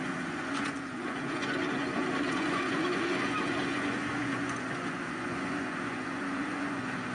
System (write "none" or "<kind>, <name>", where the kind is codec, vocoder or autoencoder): vocoder, Vocos